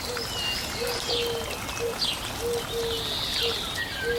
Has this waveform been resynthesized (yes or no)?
no